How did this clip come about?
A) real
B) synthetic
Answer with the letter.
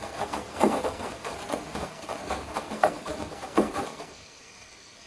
B